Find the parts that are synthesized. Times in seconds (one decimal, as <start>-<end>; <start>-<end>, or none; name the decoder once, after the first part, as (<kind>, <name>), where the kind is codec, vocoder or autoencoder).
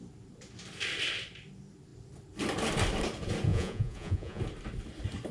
3.5-4.4 (vocoder, Vocos)